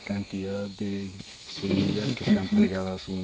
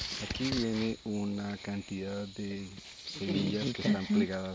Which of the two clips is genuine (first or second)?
second